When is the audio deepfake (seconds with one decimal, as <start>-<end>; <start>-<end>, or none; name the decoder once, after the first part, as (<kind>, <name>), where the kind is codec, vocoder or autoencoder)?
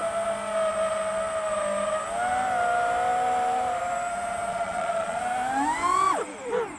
4.5-5.2 (vocoder, Vocos)